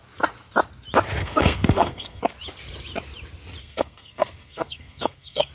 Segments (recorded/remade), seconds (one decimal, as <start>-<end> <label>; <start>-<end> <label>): 0.0-1.2 recorded; 1.2-2.2 remade; 2.2-3.6 recorded; 3.6-5.5 remade